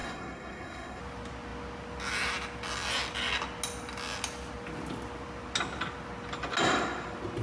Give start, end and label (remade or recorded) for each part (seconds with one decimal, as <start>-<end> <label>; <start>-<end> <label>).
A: 0.0-1.0 remade; 1.0-7.4 recorded

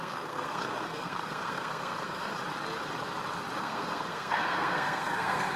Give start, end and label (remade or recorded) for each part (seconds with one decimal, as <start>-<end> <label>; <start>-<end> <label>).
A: 0.0-2.3 remade; 2.3-3.6 recorded; 3.6-5.6 remade

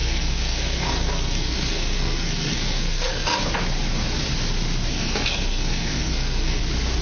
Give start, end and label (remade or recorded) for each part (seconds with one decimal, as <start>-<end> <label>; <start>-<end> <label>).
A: 0.0-3.4 remade; 3.4-4.9 recorded; 4.9-6.6 remade; 6.6-7.0 recorded

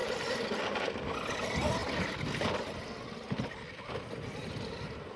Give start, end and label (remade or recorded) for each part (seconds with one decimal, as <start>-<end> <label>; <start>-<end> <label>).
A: 0.0-5.2 recorded

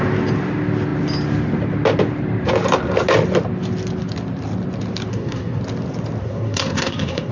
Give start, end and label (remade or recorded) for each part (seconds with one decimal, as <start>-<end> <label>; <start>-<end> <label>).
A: 0.0-5.1 recorded; 5.1-5.6 remade; 5.6-6.2 recorded; 6.2-7.3 remade

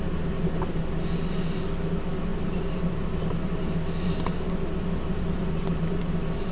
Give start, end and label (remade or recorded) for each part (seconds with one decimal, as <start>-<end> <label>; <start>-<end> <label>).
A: 0.0-6.5 recorded